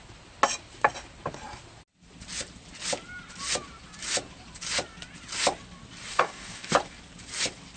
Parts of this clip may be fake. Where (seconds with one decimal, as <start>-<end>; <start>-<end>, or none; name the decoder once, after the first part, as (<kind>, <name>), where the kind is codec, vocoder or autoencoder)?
6.1-6.7 (codec, DAC)